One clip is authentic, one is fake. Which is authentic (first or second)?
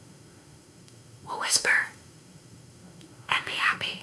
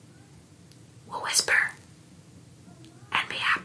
second